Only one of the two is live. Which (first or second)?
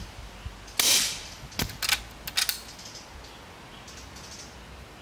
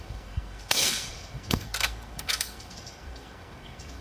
first